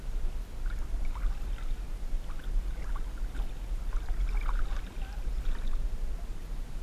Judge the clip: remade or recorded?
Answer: recorded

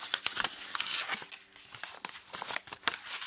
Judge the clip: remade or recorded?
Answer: recorded